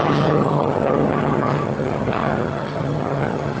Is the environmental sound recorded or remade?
remade